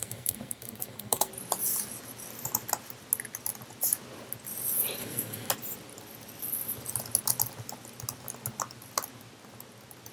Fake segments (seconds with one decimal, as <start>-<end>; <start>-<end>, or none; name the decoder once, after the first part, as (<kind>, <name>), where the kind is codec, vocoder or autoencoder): 0.0-1.3 (codec, SNAC); 5.0-5.5

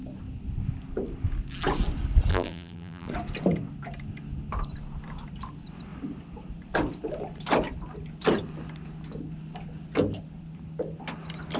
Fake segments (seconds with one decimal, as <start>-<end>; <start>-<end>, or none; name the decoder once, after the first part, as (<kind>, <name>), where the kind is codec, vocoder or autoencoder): 2.3-3.1 (vocoder, BigVGAN v2)

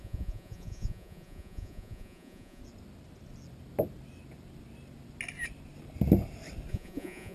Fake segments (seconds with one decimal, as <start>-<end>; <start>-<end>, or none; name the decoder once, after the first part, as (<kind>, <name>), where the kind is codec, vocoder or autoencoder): 0.0-2.6 (vocoder, Vocos); 6.7-7.3

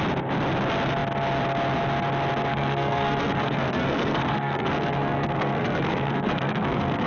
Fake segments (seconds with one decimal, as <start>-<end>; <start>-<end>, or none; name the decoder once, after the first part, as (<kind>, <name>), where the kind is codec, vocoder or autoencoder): 2.5-7.1 (codec, SNAC)

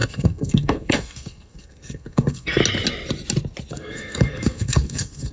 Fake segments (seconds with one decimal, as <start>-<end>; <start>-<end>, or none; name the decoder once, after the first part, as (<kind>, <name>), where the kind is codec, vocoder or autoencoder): 0.0-2.6 (codec, SNAC); 3.7-5.3

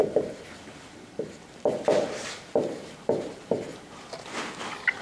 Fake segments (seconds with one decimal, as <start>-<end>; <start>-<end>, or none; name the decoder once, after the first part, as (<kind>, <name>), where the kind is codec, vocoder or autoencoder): 0.0-3.0 (vocoder, BigVGAN v2); 3.7-4.6

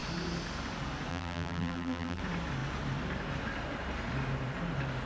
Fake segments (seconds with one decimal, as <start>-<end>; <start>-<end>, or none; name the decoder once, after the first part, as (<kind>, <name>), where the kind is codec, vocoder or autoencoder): 1.1-2.2 (vocoder, BigVGAN v2)

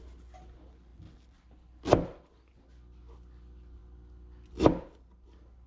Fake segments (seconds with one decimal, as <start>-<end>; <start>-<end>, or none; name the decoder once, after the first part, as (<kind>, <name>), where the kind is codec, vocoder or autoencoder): none